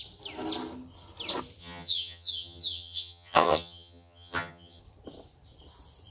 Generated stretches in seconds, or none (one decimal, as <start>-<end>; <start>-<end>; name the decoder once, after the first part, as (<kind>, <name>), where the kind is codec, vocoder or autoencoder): 1.6-4.8 (vocoder, HiFi-GAN)